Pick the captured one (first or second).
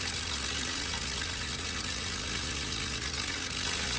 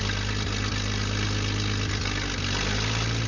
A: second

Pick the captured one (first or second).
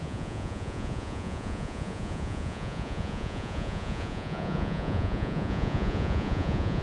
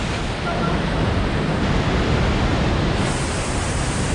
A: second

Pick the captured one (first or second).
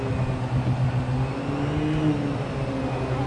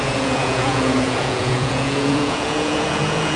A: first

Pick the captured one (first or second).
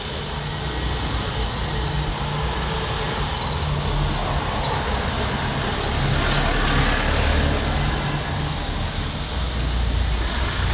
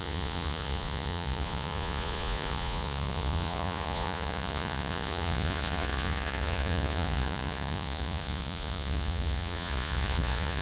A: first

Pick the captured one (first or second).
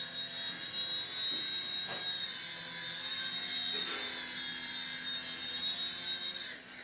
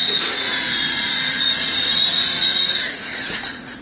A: first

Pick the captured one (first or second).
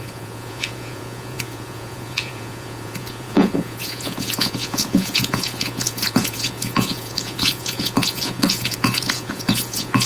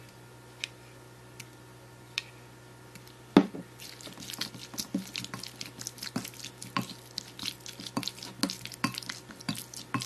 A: second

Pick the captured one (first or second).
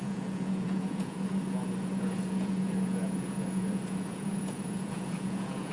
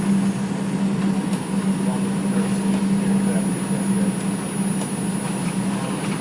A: second